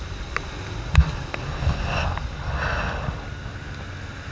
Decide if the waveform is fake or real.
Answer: real